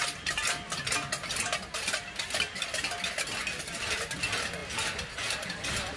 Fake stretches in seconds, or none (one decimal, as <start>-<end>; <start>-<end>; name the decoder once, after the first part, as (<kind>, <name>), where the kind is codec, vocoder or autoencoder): none